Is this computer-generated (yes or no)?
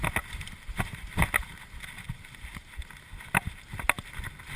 no